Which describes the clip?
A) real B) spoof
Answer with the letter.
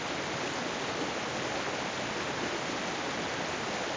A